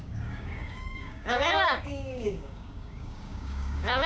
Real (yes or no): no